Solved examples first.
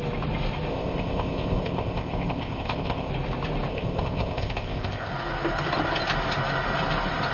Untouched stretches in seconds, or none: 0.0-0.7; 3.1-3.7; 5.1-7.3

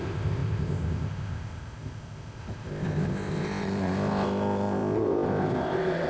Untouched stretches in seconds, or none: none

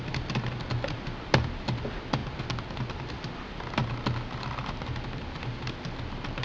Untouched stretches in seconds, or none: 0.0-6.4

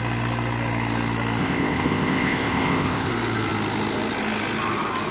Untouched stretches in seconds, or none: 0.0-1.4; 3.1-5.1

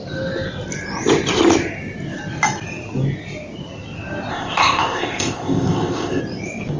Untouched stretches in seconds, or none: 0.0-4.3; 6.2-6.8

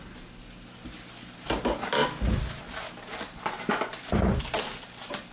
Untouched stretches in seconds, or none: 0.0-5.3